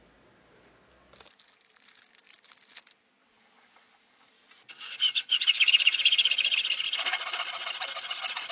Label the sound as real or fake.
real